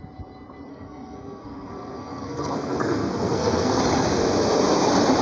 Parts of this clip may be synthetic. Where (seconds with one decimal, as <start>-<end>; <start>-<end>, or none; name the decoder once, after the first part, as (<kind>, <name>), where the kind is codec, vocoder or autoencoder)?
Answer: 0.7-3.8 (codec, SNAC)